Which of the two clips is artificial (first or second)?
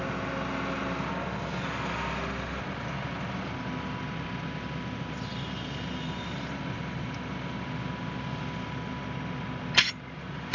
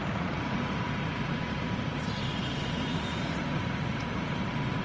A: second